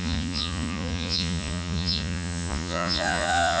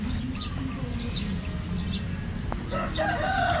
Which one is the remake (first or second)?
first